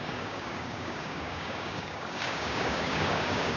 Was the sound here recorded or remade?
remade